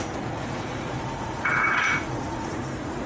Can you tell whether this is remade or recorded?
remade